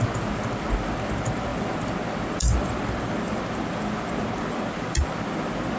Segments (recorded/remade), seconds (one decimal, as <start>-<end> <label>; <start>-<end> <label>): 0.0-5.8 recorded